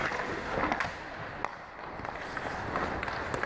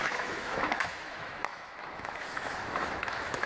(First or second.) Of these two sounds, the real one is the first